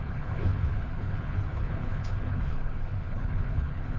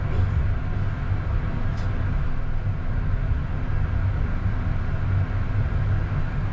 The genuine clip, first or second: second